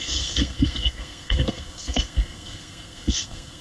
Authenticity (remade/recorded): remade